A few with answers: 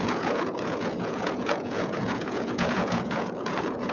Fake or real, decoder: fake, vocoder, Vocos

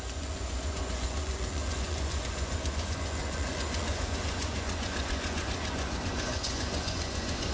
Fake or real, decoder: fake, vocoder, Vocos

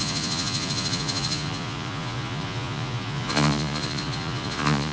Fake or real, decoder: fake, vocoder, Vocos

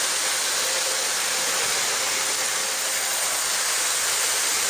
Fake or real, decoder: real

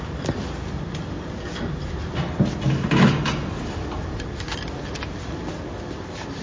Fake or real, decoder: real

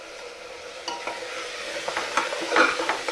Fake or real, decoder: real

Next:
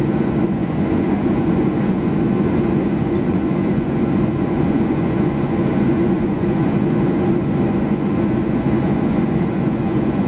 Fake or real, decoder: fake, vocoder, Vocos